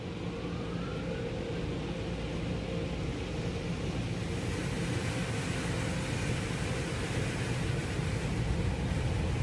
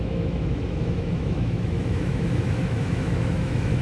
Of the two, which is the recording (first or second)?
first